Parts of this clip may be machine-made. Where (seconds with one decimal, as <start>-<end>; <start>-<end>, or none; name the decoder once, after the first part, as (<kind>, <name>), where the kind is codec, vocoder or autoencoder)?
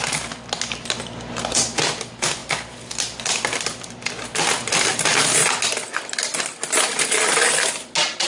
none